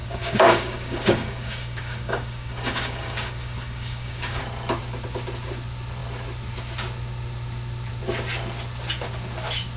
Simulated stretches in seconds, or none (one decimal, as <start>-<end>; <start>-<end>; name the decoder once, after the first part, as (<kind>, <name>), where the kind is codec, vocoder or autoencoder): 0.0-4.4 (codec, DAC)